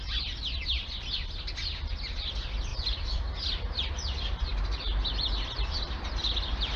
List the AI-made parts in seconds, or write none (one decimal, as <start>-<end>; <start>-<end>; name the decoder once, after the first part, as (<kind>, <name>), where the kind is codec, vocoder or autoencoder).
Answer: none